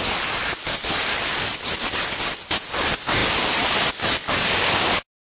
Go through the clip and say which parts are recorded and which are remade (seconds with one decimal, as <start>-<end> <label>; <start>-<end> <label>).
0.0-5.4 recorded